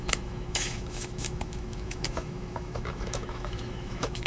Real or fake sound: fake